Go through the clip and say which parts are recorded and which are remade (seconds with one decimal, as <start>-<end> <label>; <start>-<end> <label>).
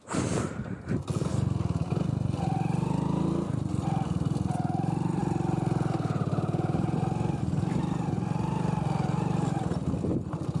0.0-10.6 recorded